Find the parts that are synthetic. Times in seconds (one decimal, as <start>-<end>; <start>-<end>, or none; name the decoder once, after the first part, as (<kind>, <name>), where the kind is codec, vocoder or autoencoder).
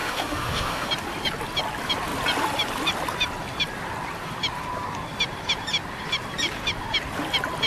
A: 0.0-0.9 (autoencoder, DAC-VAE)